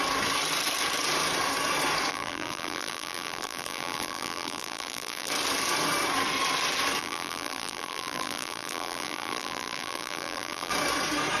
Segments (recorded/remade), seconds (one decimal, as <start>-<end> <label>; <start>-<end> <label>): 0.0-2.1 recorded; 2.1-5.3 remade; 5.3-7.0 recorded; 7.0-10.7 remade; 10.7-11.4 recorded